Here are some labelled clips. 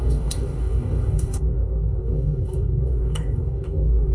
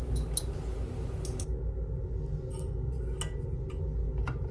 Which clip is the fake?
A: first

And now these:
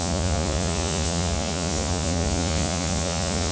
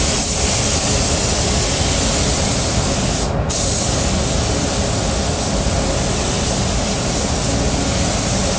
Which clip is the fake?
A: first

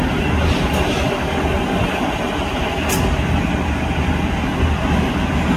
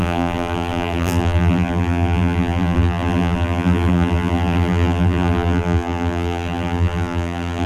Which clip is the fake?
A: second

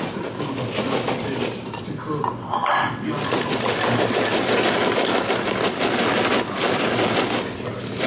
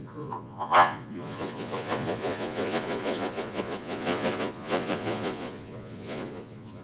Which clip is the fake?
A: second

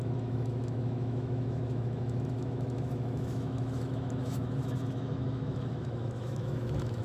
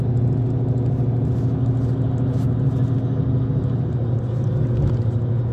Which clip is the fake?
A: first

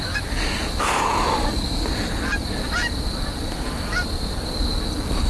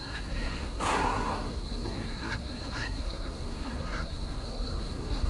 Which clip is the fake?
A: second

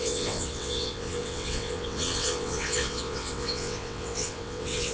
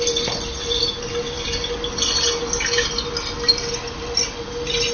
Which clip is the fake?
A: first